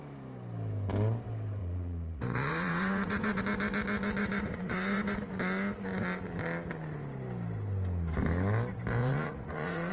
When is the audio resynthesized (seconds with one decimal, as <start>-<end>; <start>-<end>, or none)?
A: 1.6-3.4; 4.2-5.3; 9.0-9.9